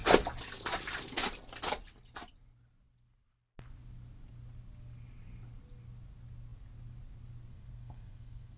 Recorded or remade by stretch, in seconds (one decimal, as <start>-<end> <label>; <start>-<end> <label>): 0.0-7.5 recorded; 7.5-8.6 remade